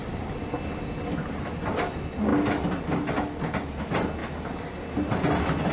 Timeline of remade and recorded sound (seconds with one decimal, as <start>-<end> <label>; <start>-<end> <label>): 0.0-5.7 recorded